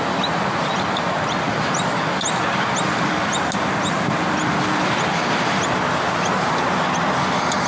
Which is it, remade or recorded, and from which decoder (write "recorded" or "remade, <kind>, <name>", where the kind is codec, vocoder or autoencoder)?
recorded